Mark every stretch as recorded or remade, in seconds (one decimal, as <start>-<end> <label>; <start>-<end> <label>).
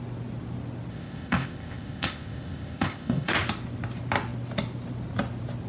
0.0-0.9 recorded; 0.9-3.3 remade; 3.3-5.7 recorded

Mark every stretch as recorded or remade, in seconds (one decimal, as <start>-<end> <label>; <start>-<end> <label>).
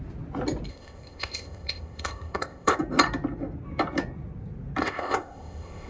0.0-0.7 recorded; 0.7-2.8 remade; 2.8-4.8 recorded; 4.8-5.9 remade